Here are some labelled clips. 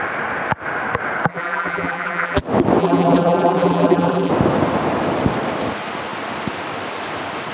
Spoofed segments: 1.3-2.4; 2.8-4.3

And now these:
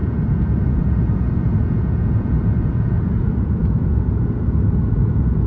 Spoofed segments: 0.0-5.5

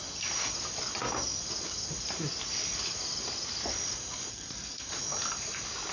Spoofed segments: 4.3-4.9

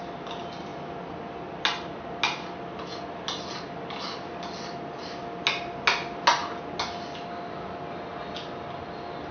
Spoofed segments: none

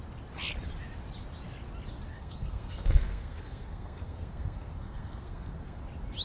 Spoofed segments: 2.1-5.8